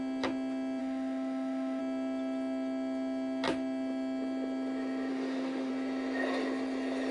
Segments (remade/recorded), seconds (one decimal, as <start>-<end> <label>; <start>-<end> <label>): 0.0-0.8 recorded; 0.8-1.8 remade; 1.8-5.1 recorded; 5.1-5.7 remade; 5.7-7.1 recorded

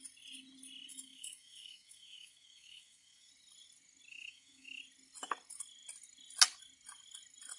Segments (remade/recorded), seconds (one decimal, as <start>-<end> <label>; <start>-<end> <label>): 0.0-0.9 recorded; 0.9-3.3 remade; 3.3-4.1 recorded; 4.1-4.8 remade; 4.8-7.6 recorded